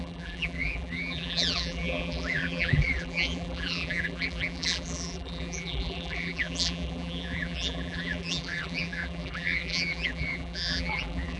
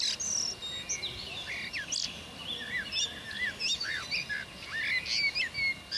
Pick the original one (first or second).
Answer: second